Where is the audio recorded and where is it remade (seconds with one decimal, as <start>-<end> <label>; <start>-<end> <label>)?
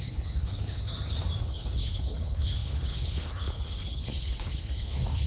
0.0-0.9 remade; 0.9-1.4 recorded; 1.4-5.3 remade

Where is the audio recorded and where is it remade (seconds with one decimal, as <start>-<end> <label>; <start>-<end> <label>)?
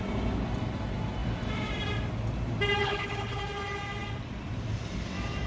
0.0-2.8 recorded; 2.8-3.4 remade; 3.4-5.5 recorded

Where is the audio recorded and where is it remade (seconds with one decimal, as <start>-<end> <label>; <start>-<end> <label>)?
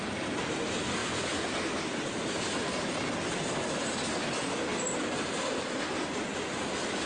0.0-7.1 recorded